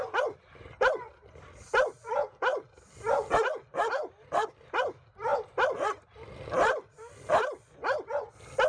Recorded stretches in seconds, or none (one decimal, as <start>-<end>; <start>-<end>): 0.0-8.7